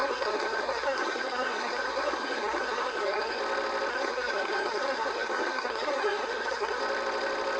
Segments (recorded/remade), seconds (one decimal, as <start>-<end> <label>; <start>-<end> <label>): 0.0-3.4 remade; 3.4-3.9 recorded; 3.9-6.8 remade; 6.8-7.6 recorded